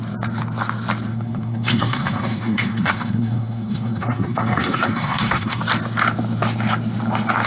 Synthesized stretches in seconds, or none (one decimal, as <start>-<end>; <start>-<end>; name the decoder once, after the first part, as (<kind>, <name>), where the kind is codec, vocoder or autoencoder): 1.1-5.6 (codec, SNAC)